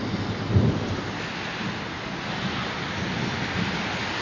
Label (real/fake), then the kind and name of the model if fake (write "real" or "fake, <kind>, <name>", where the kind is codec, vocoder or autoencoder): real